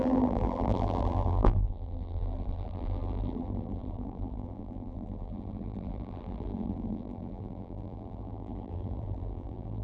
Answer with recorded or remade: remade